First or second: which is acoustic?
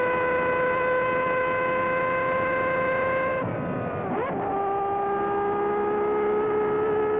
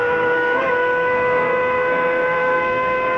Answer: first